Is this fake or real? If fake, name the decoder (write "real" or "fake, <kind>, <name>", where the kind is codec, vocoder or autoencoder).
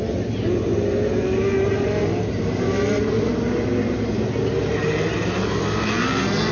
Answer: real